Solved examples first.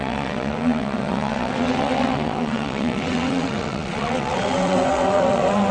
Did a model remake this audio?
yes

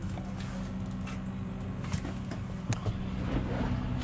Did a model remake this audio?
no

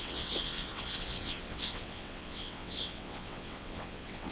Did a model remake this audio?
yes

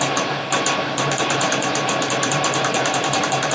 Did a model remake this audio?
yes